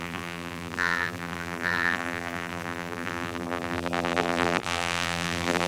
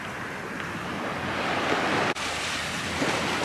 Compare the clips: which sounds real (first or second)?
second